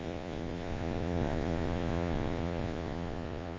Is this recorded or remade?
remade